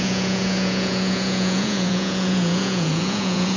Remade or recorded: remade